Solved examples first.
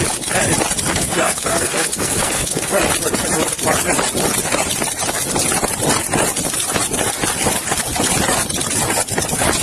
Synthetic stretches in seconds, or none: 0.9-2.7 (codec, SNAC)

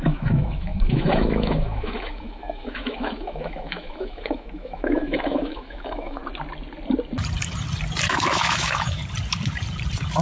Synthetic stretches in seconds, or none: 0.0-6.2 (autoencoder, DAC-VAE); 8.1-9.0

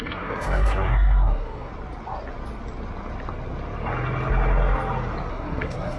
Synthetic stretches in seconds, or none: 0.0-1.7 (codec, SNAC); 5.3-6.0

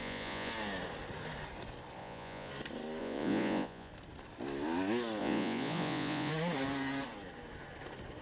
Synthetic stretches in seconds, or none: 0.0-0.5 (vocoder, Vocos); 2.0-2.5; 3.0-3.9; 5.2-6.3